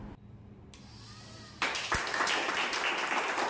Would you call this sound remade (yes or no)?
no